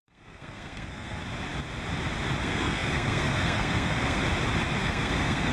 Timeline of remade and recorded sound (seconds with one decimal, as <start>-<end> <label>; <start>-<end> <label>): 0.0-1.2 remade; 1.2-2.4 recorded; 2.4-4.2 remade; 4.2-4.8 recorded; 4.8-5.5 remade